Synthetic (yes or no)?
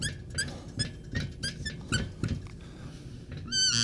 no